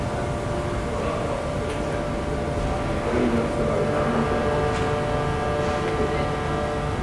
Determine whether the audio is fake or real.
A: real